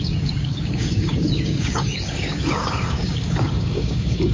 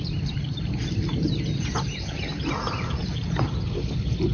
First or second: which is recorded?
second